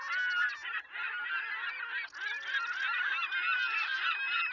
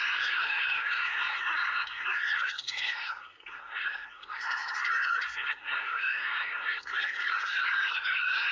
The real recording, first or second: first